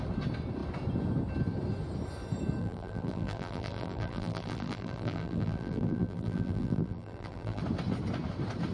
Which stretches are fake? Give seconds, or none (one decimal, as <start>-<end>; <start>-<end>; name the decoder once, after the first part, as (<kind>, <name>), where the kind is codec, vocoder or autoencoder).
2.6-7.6 (vocoder, BigVGAN v2)